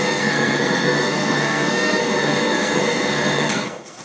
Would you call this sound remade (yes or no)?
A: yes